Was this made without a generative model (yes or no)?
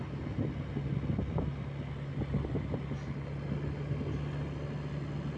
yes